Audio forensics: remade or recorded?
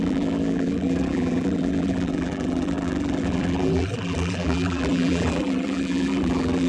remade